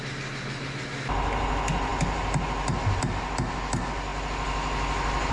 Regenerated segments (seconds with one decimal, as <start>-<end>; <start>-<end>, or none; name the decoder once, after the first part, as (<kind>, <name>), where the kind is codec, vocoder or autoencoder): none